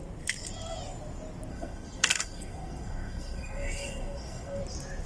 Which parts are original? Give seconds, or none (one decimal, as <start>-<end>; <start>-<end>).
0.0-1.5; 4.6-5.1